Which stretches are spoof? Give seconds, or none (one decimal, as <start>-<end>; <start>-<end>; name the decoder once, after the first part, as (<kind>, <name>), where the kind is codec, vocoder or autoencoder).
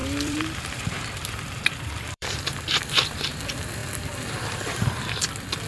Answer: 0.0-3.4 (vocoder, BigVGAN v2)